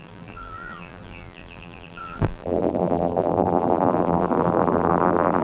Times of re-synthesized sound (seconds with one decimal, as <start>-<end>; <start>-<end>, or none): 0.0-5.4